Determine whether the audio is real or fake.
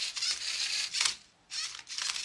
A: real